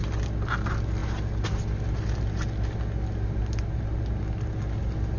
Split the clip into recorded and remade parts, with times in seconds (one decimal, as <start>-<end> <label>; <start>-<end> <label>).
0.0-5.2 recorded